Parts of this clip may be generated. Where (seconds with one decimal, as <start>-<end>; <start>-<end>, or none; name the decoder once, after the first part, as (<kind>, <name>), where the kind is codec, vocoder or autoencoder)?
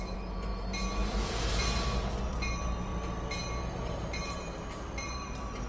0.0-0.5 (vocoder, BigVGAN v2); 2.3-2.9; 3.7-5.7